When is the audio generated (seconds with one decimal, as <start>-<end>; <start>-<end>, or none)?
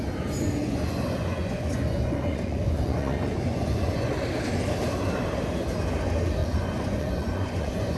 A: 0.6-4.1; 6.4-8.0